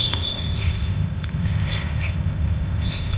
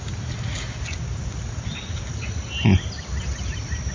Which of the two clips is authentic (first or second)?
second